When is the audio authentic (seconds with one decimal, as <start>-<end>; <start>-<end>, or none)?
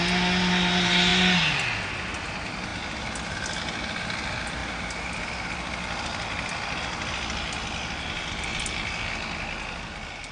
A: 0.0-10.3